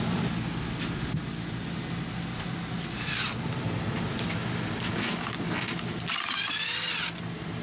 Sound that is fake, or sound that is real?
real